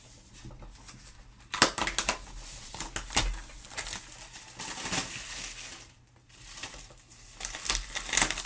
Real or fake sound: real